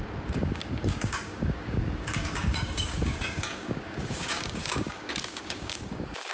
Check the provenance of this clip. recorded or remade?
remade